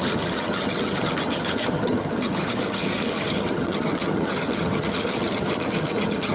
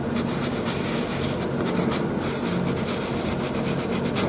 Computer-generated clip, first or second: first